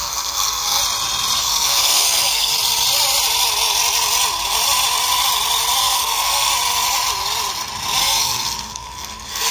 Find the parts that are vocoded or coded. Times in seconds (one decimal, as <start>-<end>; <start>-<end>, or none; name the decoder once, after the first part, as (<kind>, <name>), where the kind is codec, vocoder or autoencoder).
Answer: 0.0-0.8 (codec, SNAC); 1.4-2.5; 5.8-6.5; 8.0-9.5